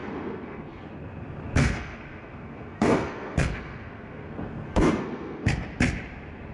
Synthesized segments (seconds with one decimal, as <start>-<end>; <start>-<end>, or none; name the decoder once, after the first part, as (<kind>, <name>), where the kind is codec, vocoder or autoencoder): 0.0-0.9 (codec, SNAC); 1.6-5.5